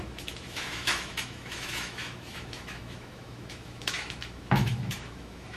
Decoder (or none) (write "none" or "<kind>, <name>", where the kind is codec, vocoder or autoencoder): autoencoder, DAC-VAE